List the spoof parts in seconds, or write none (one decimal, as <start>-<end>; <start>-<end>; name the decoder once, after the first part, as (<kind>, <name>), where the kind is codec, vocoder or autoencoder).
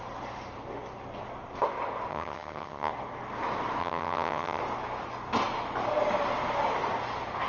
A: 2.1-2.9 (vocoder, HiFi-GAN); 3.8-4.6